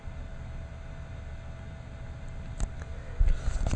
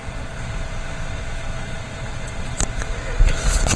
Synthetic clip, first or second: second